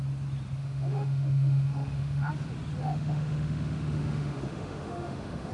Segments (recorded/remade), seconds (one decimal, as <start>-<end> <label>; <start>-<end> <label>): 0.0-0.6 recorded; 0.6-2.3 remade; 2.3-2.8 recorded; 2.8-5.5 remade

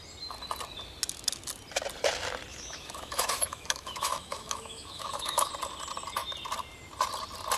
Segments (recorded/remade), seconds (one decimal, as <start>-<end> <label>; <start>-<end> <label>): 0.0-2.5 recorded; 2.5-5.5 remade; 5.5-7.6 recorded

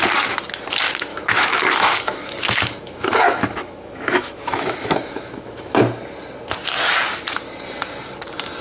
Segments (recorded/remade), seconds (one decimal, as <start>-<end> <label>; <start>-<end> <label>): 0.0-1.1 recorded; 1.1-5.8 remade; 5.8-8.6 recorded

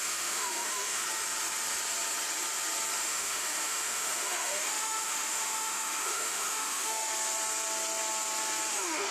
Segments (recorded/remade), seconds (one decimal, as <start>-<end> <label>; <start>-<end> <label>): 0.0-1.0 remade; 1.0-3.0 recorded; 3.0-7.1 remade; 7.1-8.7 recorded; 8.7-9.1 remade

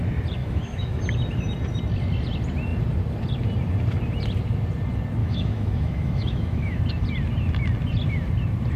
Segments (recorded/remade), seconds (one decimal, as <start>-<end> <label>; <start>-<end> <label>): 0.0-0.4 recorded; 0.4-1.0 remade; 1.0-5.2 recorded; 5.2-6.8 remade; 6.8-8.8 recorded